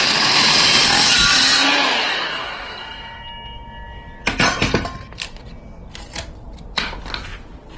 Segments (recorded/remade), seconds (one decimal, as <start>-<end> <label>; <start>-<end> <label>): 0.0-0.9 remade; 0.9-7.3 recorded; 7.3-7.8 remade